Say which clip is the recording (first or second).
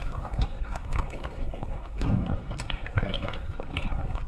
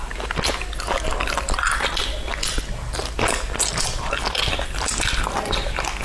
second